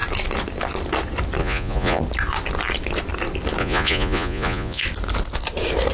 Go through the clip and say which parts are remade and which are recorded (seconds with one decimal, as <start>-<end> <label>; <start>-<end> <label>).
0.0-1.4 recorded; 1.4-2.0 remade; 2.0-3.6 recorded; 3.6-4.8 remade; 4.8-5.9 recorded